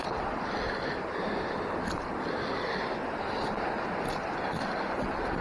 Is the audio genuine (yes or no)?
yes